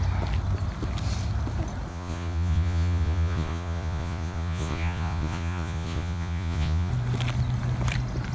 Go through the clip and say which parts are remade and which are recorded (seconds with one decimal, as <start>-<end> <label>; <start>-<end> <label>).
0.0-1.9 recorded; 1.9-6.9 remade; 6.9-8.3 recorded